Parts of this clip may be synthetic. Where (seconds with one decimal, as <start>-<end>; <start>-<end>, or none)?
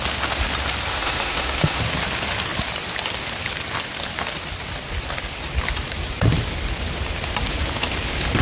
0.9-1.8